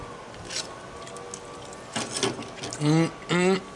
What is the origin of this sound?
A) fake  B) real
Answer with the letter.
B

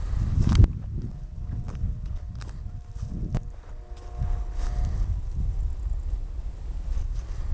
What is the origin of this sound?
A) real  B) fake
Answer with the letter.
A